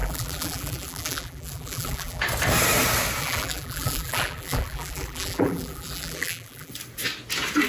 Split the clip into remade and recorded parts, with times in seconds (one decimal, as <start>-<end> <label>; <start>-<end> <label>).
0.0-2.2 remade; 2.2-3.2 recorded; 3.2-6.7 remade; 6.7-7.7 recorded